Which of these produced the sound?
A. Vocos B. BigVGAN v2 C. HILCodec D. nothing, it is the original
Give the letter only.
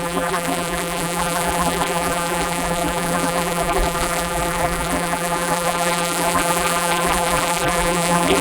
B